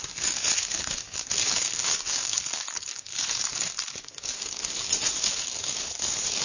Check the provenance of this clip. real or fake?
fake